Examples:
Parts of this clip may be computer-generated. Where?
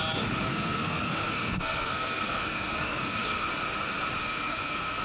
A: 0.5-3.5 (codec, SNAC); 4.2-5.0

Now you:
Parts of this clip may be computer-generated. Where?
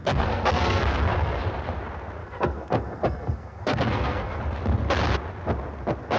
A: 0.0-1.4 (codec, SNAC); 2.2-4.4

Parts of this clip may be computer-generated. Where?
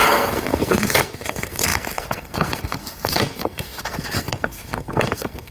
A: 0.0-5.5 (codec, SNAC)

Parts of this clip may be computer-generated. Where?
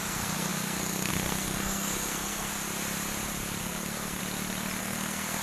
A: 0.0-2.5 (codec, SNAC); 3.6-4.2; 4.8-5.4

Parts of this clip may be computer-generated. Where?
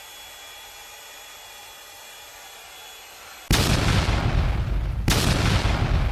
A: none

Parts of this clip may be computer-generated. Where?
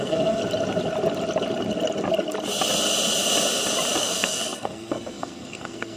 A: 0.0-0.4 (codec, SNAC); 4.0-6.0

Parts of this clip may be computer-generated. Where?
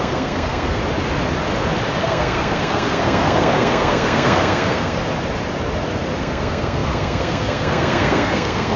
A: 0.0-0.8 (codec, SNAC); 2.0-5.0; 6.2-8.8